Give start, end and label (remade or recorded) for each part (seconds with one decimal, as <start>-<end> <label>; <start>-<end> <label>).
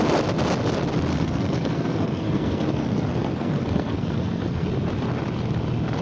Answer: 0.0-1.1 recorded; 1.1-4.7 remade; 4.7-6.0 recorded